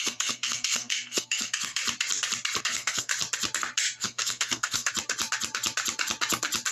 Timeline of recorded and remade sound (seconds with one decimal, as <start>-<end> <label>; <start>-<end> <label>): 0.0-1.8 remade; 1.8-2.6 recorded; 2.6-3.1 remade; 3.1-4.0 recorded; 4.0-4.9 remade; 4.9-6.7 recorded